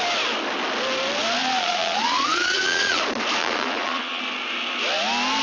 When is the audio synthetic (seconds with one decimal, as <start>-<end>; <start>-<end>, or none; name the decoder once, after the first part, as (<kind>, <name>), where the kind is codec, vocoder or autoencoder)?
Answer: 1.4-3.0 (vocoder, Vocos); 3.4-4.2